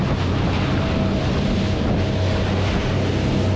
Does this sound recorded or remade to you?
recorded